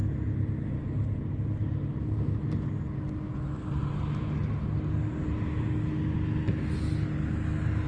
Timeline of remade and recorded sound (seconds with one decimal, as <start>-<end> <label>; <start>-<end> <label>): 0.0-7.9 recorded